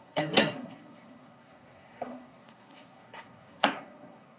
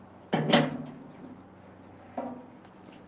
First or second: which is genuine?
second